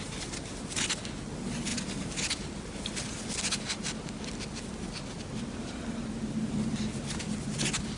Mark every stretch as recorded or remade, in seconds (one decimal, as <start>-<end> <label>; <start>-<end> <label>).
0.0-8.0 recorded